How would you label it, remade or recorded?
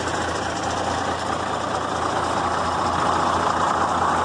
recorded